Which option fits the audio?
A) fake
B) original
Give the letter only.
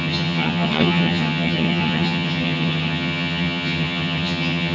A